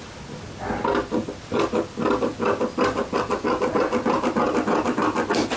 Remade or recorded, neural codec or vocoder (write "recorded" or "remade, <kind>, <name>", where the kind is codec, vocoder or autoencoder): recorded